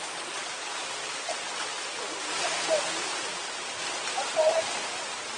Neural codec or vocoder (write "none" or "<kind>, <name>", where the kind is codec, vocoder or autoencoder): none